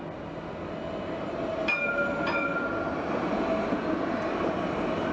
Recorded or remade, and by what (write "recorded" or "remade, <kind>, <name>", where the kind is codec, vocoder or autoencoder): recorded